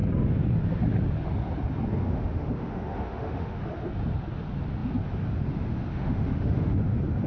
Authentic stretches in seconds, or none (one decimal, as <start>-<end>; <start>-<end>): 0.0-2.0; 3.6-5.9; 6.8-7.3

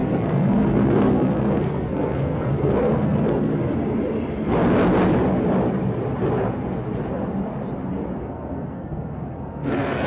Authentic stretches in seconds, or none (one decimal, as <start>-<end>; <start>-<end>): 3.5-8.2

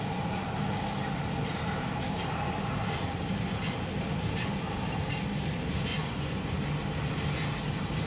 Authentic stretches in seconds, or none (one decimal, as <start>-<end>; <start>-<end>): 0.0-5.9; 6.6-8.1

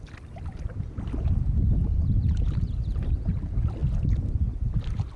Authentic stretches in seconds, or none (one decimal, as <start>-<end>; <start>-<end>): 0.0-5.2

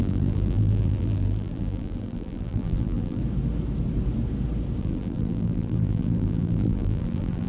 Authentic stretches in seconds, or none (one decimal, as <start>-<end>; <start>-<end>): 3.2-4.8

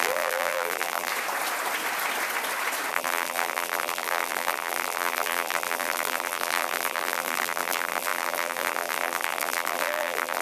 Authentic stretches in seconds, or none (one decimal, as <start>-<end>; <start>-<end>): 1.1-2.9

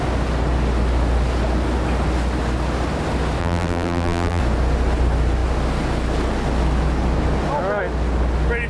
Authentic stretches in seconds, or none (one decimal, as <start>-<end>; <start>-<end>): 0.0-3.4; 4.4-8.7

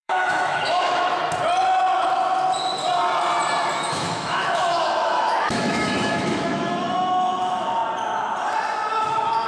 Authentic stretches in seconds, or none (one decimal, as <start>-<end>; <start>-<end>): 1.2-3.7; 7.8-9.0